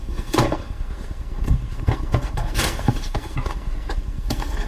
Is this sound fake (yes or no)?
yes